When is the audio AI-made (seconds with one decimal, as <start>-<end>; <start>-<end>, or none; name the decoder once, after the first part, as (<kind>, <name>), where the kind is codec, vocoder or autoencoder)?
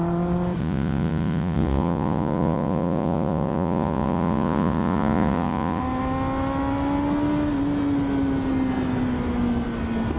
0.6-5.8 (vocoder, Vocos)